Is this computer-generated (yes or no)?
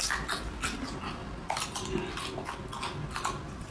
no